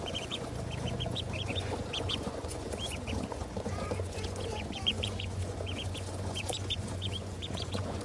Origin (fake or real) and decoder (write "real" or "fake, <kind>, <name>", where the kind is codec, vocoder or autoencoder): fake, vocoder, Vocos